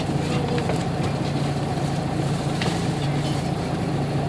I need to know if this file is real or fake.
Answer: real